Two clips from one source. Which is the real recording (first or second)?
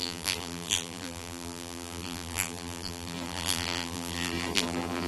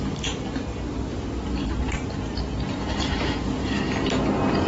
second